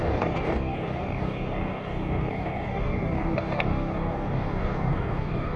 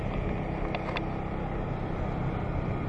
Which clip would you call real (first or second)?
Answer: second